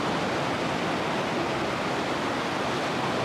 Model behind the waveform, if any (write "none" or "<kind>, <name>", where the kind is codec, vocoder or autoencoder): vocoder, BigVGAN v2